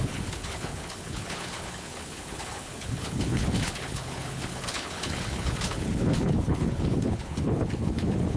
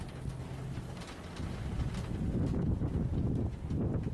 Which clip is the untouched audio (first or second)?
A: second